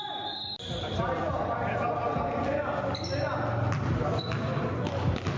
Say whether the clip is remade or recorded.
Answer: recorded